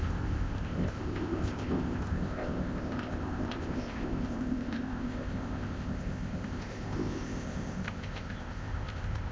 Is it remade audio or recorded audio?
remade